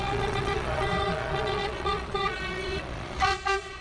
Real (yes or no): no